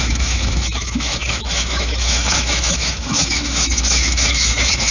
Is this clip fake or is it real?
fake